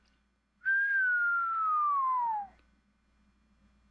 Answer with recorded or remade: recorded